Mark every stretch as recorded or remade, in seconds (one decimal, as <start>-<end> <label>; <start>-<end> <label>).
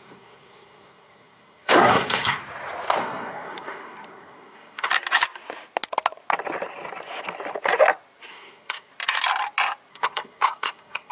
0.0-2.4 remade; 2.4-3.0 recorded; 3.0-4.9 remade; 4.9-8.3 recorded; 8.3-8.9 remade; 8.9-9.9 recorded; 9.9-11.1 remade